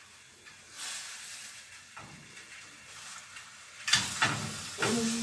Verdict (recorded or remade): recorded